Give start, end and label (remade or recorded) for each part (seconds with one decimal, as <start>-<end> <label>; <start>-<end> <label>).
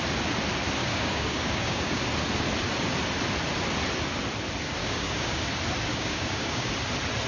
0.0-0.8 recorded; 0.8-2.0 remade; 2.0-4.8 recorded; 4.8-5.4 remade; 5.4-5.9 recorded; 5.9-6.7 remade; 6.7-7.3 recorded